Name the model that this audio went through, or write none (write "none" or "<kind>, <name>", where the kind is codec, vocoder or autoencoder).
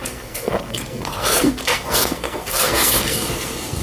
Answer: codec, SNAC